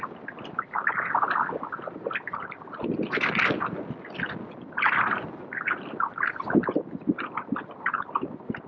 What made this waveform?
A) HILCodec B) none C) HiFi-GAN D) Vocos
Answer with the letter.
B